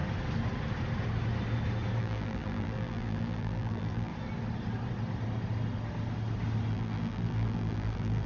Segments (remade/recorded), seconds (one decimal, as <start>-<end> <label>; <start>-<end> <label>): 0.0-2.0 recorded; 2.0-4.1 remade; 4.1-6.7 recorded; 6.7-8.3 remade